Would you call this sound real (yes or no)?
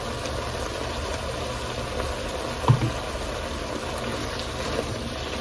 yes